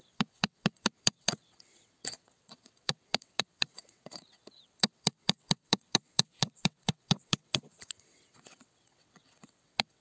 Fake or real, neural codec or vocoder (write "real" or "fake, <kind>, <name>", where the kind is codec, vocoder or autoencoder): fake, vocoder, WaveNeXt